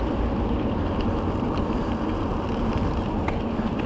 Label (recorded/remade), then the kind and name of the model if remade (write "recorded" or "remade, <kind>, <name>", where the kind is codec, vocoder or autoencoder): remade, vocoder, BigVGAN v2